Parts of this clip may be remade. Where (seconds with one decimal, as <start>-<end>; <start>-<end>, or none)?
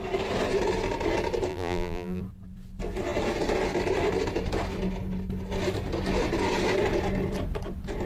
1.5-2.2